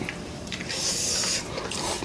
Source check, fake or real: real